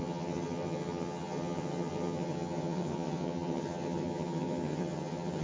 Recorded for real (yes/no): no